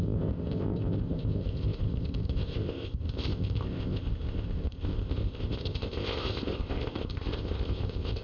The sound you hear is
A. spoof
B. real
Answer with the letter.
A